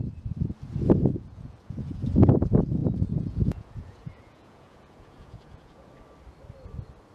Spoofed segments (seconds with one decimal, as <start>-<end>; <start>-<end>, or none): 1.1-2.0; 2.8-5.9